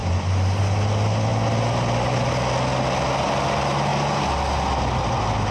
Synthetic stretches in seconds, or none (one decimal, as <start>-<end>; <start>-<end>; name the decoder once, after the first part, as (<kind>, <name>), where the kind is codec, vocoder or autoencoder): none